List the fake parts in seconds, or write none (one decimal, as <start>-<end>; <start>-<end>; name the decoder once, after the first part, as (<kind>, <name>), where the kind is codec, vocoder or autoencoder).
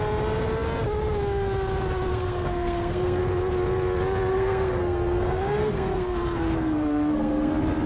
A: 2.1-3.2 (codec, SNAC); 4.3-7.5